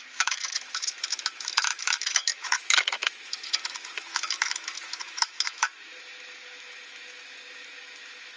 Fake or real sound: fake